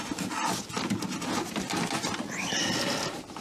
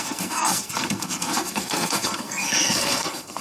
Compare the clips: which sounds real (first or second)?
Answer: first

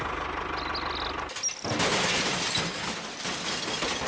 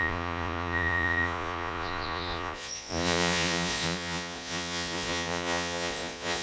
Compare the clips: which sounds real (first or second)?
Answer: first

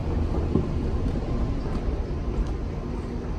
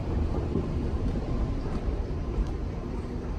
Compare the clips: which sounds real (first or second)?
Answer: first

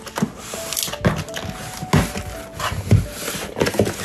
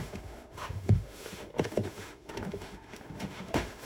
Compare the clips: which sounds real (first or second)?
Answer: first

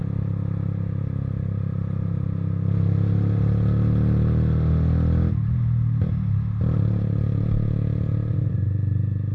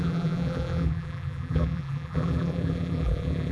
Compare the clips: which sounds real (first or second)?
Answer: first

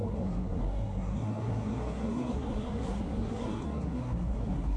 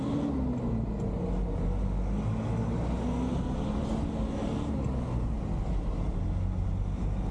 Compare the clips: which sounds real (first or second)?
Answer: second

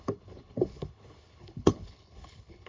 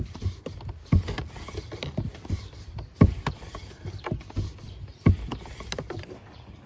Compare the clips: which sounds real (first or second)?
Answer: second